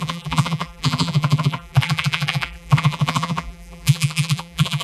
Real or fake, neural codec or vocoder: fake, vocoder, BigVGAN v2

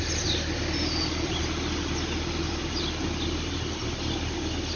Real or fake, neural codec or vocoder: real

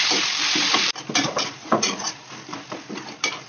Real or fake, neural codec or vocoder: fake, vocoder, BigVGAN v2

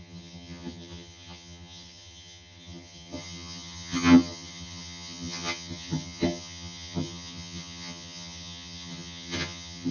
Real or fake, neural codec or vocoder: fake, vocoder, HiFi-GAN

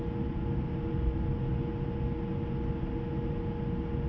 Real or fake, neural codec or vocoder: real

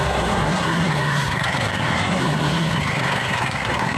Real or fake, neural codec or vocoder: fake, codec, SNAC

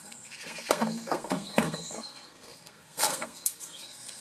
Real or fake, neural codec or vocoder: fake, codec, SNAC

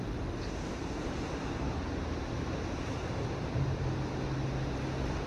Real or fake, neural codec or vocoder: real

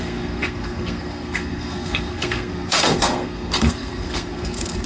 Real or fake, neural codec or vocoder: fake, codec, SNAC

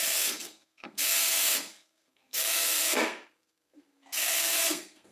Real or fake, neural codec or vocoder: fake, codec, SNAC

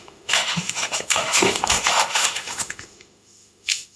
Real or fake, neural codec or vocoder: fake, autoencoder, DAC-VAE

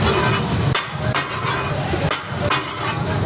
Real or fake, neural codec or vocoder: real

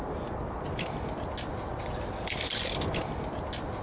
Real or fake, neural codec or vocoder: real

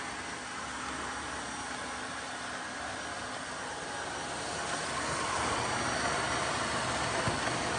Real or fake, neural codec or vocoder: real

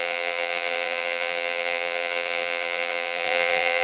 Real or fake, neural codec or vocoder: fake, vocoder, BigVGAN v2